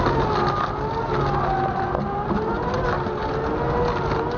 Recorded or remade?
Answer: recorded